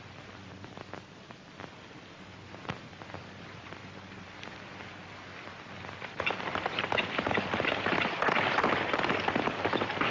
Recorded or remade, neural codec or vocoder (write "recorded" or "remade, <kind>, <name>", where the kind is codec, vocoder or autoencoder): recorded